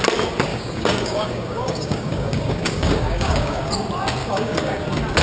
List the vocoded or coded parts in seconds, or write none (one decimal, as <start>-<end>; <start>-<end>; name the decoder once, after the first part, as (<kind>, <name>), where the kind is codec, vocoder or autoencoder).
0.5-3.6 (codec, DAC); 4.2-4.8